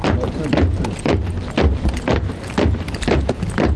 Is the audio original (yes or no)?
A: yes